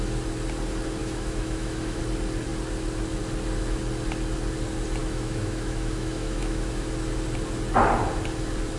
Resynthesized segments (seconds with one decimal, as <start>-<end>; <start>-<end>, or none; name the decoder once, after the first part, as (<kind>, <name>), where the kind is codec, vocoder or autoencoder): 1.0-2.0 (autoencoder, DAC-VAE); 5.0-6.7